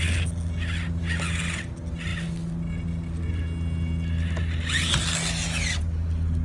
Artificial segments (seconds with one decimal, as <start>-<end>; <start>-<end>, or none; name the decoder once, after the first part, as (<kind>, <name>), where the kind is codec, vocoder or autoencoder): none